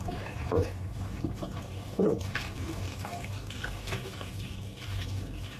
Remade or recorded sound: remade